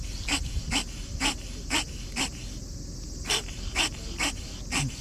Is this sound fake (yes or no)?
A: no